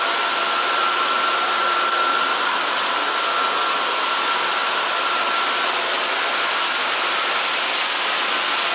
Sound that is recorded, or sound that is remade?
recorded